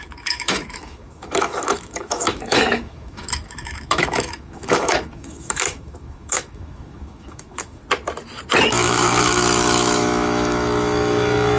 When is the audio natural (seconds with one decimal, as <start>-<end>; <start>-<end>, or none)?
7.8-8.7